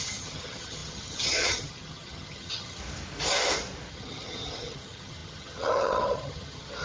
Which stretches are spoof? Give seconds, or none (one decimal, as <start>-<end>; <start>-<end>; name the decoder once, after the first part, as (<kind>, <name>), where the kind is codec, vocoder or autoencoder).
0.0-2.8 (vocoder, HiFi-GAN); 3.9-6.8